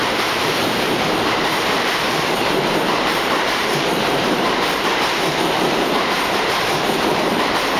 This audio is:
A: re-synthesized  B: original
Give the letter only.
A